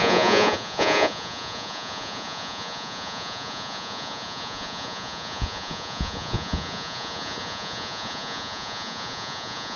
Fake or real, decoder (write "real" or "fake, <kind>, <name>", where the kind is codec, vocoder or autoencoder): fake, vocoder, Vocos